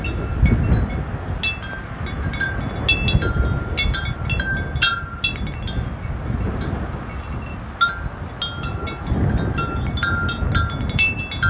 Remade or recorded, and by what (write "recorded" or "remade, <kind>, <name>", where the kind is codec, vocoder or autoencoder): recorded